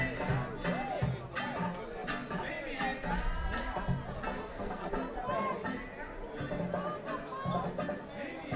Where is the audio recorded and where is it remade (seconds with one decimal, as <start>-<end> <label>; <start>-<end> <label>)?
0.0-4.4 recorded; 4.4-4.9 remade; 4.9-8.6 recorded